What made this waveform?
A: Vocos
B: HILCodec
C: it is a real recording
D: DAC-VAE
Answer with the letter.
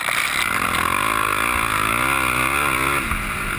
C